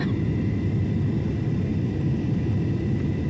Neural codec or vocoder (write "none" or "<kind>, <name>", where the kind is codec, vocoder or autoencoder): none